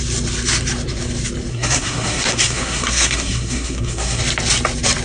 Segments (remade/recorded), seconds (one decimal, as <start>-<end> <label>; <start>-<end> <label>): 0.0-1.5 recorded; 1.5-4.2 remade; 4.2-5.0 recorded